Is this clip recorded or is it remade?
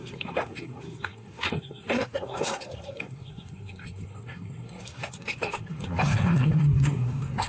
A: remade